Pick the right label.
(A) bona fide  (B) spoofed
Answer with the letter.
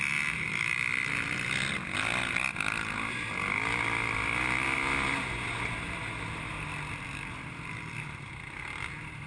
A